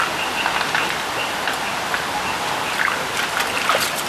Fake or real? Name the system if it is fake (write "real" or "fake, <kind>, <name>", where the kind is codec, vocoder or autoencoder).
real